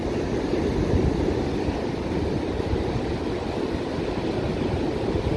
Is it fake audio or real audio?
real